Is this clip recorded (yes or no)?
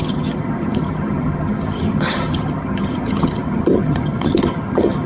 no